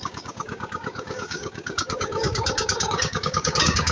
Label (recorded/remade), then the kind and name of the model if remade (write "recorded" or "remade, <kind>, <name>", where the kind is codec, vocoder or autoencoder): remade, codec, DAC